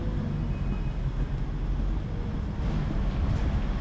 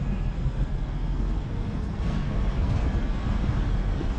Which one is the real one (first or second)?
first